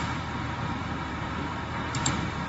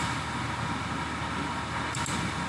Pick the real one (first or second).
second